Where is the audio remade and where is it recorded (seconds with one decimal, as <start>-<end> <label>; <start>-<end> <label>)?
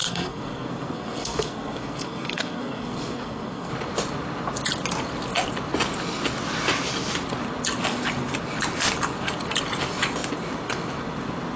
0.0-3.7 remade; 3.7-11.6 recorded